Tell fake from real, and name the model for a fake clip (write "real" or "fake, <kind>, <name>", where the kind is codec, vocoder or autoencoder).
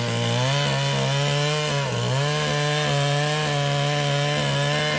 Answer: real